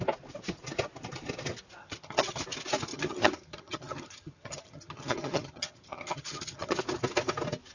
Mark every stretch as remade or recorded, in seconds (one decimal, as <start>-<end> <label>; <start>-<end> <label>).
0.0-1.8 recorded; 1.8-2.4 remade; 2.4-2.9 recorded; 2.9-6.8 remade; 6.8-7.7 recorded